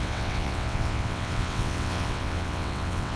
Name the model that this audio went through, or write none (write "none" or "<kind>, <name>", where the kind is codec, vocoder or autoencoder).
vocoder, WaveNeXt